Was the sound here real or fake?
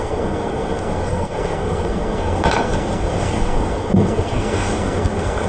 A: fake